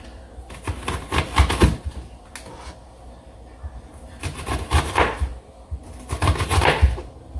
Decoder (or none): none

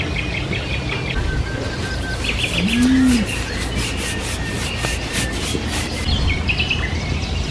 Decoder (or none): none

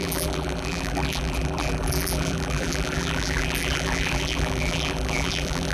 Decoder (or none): vocoder, BigVGAN v2